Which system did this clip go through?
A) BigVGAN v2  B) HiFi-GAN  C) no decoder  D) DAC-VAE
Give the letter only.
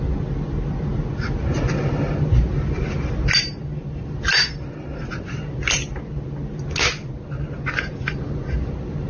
C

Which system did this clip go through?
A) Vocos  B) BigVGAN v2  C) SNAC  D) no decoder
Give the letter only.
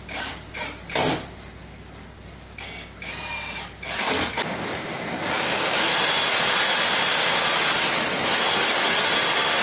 D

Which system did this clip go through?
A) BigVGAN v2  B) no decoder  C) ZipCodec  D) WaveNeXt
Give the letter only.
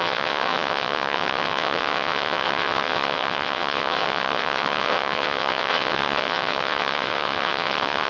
D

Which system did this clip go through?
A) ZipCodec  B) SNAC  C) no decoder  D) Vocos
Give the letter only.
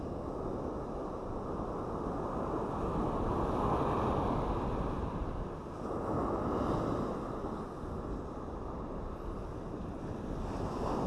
C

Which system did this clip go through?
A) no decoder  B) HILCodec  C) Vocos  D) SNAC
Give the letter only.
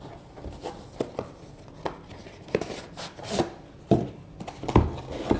A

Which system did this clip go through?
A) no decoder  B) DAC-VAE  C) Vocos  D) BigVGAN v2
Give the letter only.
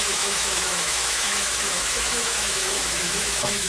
B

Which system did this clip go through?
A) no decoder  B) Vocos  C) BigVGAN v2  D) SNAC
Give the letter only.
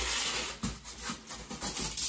A